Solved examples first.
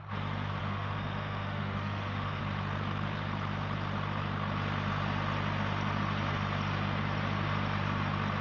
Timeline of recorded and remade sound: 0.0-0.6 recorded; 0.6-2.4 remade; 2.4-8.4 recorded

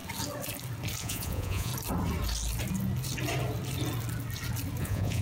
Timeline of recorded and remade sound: 0.0-1.0 recorded; 1.0-1.7 remade; 1.7-4.8 recorded; 4.8-5.2 remade